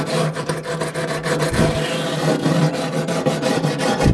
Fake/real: fake